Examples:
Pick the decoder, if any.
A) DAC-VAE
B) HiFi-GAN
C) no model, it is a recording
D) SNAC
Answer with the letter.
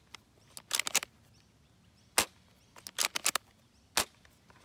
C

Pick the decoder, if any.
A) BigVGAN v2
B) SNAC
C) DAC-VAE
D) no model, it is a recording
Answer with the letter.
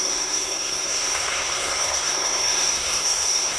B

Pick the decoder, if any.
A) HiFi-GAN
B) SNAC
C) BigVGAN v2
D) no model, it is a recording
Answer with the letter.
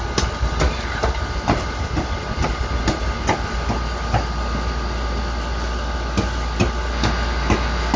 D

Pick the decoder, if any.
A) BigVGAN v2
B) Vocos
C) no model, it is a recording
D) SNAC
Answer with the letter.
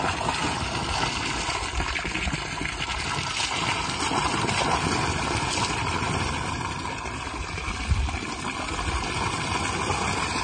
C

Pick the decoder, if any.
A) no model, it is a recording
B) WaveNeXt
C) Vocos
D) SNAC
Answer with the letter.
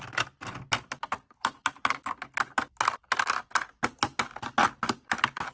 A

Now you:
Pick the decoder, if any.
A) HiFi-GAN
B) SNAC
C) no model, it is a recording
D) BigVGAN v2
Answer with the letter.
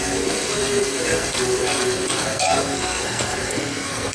B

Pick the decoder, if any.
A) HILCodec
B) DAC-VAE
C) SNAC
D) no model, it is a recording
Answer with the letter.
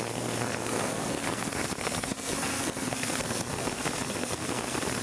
C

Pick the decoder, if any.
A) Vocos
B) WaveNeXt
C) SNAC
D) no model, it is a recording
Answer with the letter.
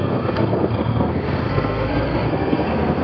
C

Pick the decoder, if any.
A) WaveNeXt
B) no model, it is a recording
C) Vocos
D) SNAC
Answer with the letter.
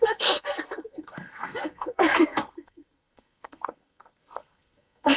D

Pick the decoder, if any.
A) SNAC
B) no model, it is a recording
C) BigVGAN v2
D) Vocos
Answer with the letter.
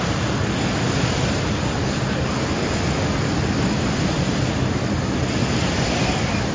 B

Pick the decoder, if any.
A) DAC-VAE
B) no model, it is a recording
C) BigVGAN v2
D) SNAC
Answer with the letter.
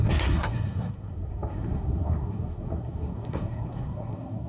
D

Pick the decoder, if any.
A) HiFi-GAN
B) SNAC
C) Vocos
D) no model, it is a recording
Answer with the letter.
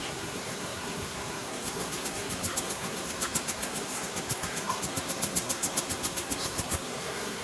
B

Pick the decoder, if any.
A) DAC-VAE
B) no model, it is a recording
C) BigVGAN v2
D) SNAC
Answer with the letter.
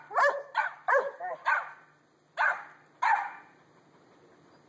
B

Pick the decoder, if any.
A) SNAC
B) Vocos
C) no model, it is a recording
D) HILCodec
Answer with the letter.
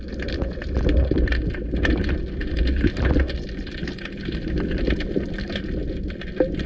C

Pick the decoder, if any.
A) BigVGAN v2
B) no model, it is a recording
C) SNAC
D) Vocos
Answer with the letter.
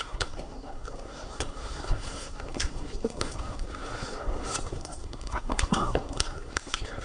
C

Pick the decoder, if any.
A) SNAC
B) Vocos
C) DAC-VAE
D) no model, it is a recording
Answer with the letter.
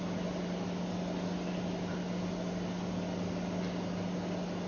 D